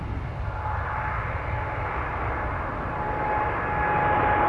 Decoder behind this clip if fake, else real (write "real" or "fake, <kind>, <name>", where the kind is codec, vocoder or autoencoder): real